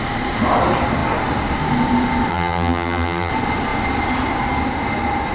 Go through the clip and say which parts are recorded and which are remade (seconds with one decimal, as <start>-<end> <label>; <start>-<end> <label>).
0.0-2.3 recorded; 2.3-3.3 remade; 3.3-5.3 recorded